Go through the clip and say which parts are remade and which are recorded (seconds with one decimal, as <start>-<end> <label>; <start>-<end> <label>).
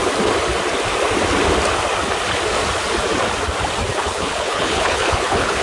0.0-3.9 recorded; 3.9-5.6 remade